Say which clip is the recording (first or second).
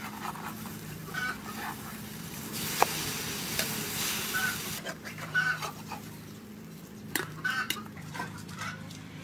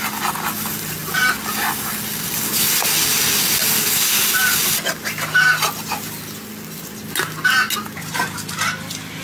second